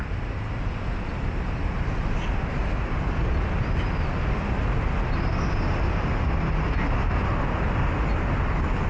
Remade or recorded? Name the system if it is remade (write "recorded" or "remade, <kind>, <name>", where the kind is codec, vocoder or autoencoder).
recorded